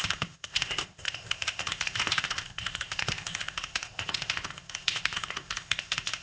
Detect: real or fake fake